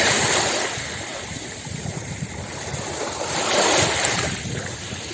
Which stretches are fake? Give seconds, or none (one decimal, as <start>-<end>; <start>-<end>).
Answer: none